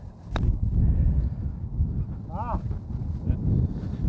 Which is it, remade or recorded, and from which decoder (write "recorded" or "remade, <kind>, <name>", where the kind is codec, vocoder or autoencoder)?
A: recorded